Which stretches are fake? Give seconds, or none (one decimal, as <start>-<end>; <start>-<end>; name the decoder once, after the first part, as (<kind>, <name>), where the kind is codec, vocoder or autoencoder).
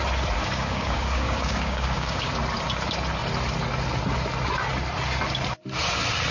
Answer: 0.4-2.3 (codec, DAC)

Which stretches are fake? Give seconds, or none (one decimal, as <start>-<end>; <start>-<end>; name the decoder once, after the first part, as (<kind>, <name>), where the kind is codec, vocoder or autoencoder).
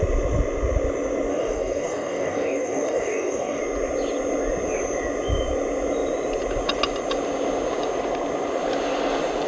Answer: 1.3-3.6 (codec, DAC)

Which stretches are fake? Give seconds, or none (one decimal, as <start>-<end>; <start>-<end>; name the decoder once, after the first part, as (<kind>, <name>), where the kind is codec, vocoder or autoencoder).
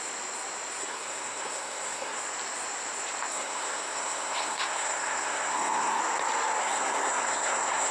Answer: 0.8-2.2 (codec, SNAC); 3.3-6.0; 6.6-7.9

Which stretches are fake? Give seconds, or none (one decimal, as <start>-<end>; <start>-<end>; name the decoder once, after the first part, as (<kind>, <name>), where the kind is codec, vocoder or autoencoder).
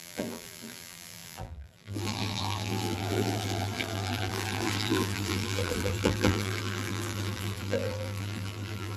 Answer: 0.0-9.0 (vocoder, BigVGAN v2)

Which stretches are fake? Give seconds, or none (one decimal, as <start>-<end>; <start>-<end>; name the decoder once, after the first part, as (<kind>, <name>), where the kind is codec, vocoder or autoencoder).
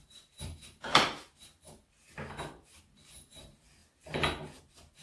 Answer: 0.0-3.8 (vocoder, BigVGAN v2); 4.6-5.0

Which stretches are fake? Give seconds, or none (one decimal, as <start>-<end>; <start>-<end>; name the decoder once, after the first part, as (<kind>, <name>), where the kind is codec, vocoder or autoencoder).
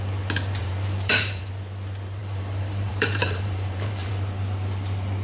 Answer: 0.6-1.5 (vocoder, BigVGAN v2); 2.2-4.1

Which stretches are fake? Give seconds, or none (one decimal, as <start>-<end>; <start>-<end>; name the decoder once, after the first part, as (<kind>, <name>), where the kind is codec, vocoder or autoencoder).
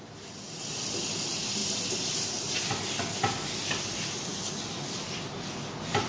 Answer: none